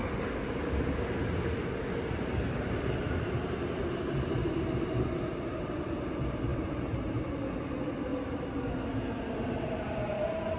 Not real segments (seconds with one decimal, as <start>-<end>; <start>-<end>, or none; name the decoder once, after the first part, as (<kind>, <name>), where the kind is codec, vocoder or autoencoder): 6.5-7.1 (vocoder, BigVGAN v2)